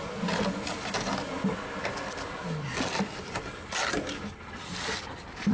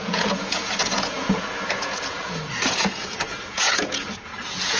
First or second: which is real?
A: first